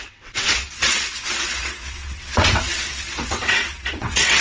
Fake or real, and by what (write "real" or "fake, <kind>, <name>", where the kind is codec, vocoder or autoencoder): fake, vocoder, WaveNeXt